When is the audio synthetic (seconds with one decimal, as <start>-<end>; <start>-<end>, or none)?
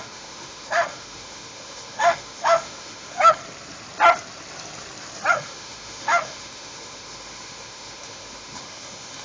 0.0-3.4; 5.3-9.2